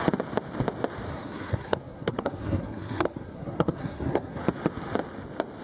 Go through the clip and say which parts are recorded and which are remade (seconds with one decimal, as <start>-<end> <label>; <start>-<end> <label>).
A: 0.0-1.1 recorded; 1.1-4.4 remade; 4.4-5.6 recorded

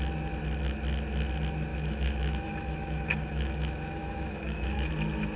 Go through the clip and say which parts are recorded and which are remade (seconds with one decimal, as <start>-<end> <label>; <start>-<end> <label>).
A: 0.0-1.7 recorded; 1.7-4.9 remade; 4.9-5.4 recorded

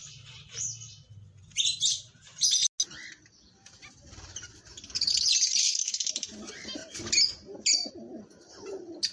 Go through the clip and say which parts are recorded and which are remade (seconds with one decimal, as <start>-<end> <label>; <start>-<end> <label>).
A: 0.0-5.6 recorded; 5.6-6.1 remade; 6.1-9.1 recorded